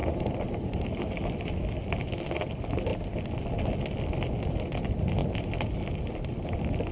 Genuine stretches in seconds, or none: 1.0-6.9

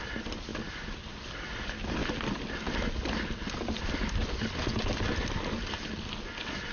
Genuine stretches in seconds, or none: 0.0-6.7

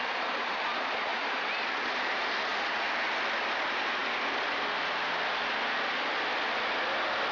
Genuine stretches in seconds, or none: 1.1-1.7; 2.5-3.2; 4.0-7.3

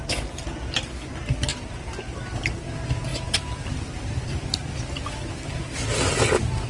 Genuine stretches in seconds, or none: 0.0-3.1; 4.3-6.7

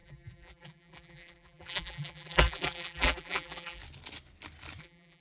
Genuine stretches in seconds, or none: 3.8-4.8

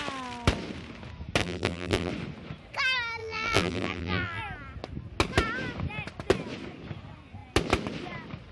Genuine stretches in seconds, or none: 0.0-1.4; 2.1-3.2; 4.4-8.5